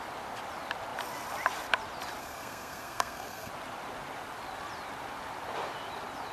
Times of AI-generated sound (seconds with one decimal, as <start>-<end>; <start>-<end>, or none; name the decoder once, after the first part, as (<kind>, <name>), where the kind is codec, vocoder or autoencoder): 2.2-3.5 (codec, SNAC)